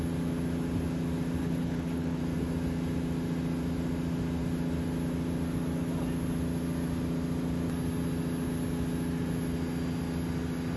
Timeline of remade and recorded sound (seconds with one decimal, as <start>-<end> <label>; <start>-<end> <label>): 0.0-1.4 recorded; 1.4-2.2 remade; 2.2-10.8 recorded

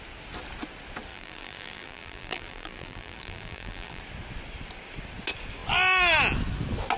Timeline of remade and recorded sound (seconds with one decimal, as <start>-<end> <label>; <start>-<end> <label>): 0.0-1.1 recorded; 1.1-4.0 remade; 4.0-7.0 recorded

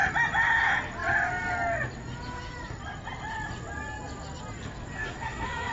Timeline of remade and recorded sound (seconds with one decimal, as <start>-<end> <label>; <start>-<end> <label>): 0.0-5.0 recorded; 5.0-5.7 remade

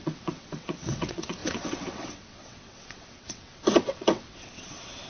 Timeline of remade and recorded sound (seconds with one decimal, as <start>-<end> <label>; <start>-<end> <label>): 0.0-5.1 remade